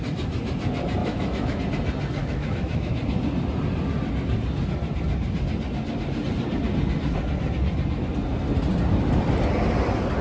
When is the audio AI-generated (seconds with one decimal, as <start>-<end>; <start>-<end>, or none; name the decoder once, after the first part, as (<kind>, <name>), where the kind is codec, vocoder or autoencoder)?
1.0-1.6 (autoencoder, DAC-VAE); 2.2-3.0